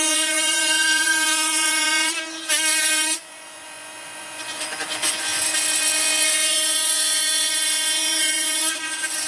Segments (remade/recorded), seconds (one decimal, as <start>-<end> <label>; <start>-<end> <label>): 0.0-9.3 remade